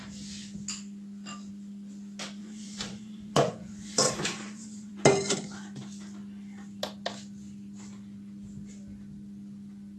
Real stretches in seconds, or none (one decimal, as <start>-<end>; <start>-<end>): 0.0-2.4; 4.9-10.0